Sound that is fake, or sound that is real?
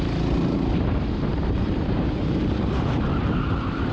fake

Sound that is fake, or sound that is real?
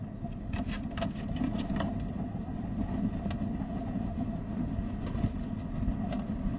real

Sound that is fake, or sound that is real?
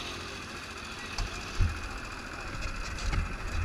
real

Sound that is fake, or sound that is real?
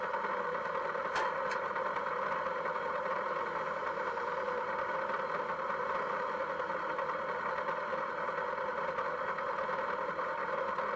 real